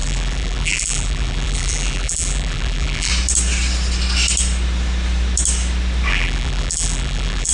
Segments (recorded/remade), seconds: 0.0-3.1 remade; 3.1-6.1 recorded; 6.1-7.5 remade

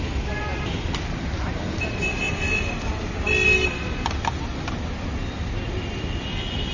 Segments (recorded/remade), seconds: 0.0-6.7 recorded

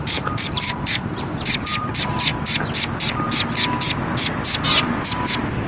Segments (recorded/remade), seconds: 0.0-2.3 remade; 2.3-5.7 recorded

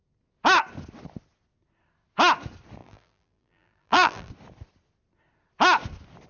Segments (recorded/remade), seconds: 0.0-2.8 recorded; 2.8-4.3 remade; 4.3-6.3 recorded

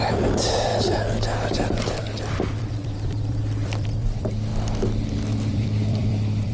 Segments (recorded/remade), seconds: 0.0-0.7 remade; 0.7-2.3 recorded; 2.3-4.5 remade; 4.5-5.5 recorded; 5.5-6.5 remade

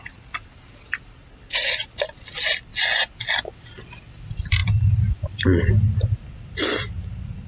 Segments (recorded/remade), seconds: 0.0-2.7 remade; 2.7-3.7 recorded; 3.7-7.5 remade

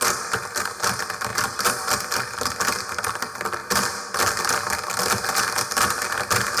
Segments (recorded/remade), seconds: 0.0-3.6 recorded; 3.6-4.9 remade; 4.9-6.6 recorded